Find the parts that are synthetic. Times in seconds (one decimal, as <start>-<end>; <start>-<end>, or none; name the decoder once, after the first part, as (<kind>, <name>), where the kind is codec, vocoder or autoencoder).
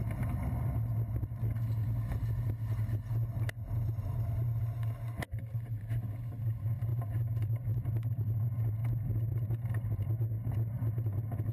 none